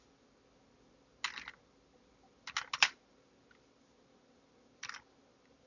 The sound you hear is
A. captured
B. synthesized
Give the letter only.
A